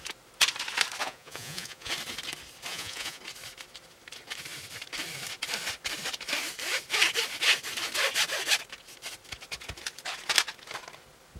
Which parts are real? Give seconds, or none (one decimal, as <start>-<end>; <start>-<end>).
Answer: 0.0-1.0; 1.9-2.7; 3.2-11.4

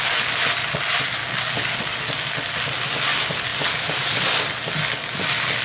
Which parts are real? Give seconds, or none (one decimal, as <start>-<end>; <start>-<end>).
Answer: 0.0-1.2; 1.8-5.6

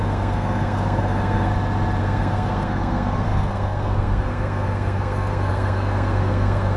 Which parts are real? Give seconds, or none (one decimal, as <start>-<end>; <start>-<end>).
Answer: 1.5-2.0

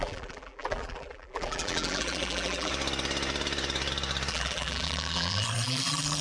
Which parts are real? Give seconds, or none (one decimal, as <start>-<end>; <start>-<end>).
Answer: 2.7-4.3